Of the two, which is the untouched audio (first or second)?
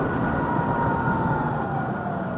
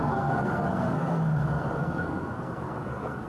first